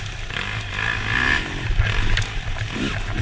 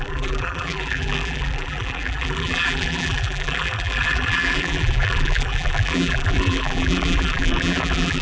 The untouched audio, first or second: first